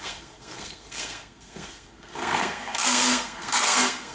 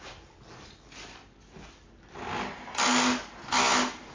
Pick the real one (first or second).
second